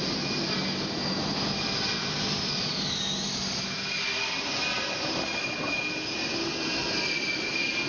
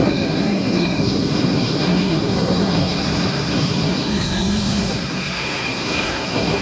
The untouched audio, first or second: first